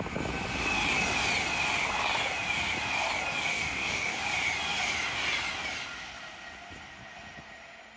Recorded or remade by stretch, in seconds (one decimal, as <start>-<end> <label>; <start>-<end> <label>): 0.0-3.5 recorded; 3.5-4.2 remade; 4.2-8.0 recorded